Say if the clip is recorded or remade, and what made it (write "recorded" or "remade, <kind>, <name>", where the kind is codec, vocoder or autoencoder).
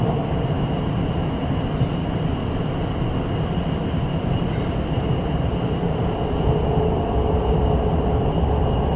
recorded